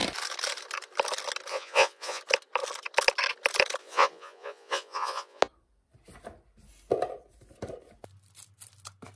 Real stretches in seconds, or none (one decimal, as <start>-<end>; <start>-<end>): 0.0-1.5; 2.2-3.8; 5.4-9.2